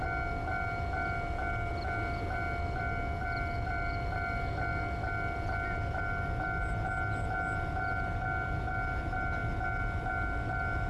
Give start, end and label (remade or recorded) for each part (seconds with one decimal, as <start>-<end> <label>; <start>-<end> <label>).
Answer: 0.0-10.9 recorded